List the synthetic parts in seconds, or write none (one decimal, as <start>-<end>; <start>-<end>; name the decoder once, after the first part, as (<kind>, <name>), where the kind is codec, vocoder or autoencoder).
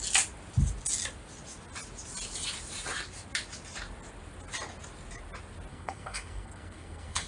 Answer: 5.7-7.3 (codec, SNAC)